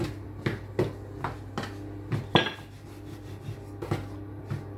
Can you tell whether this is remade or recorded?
recorded